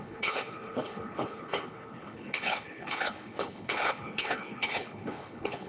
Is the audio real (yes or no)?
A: no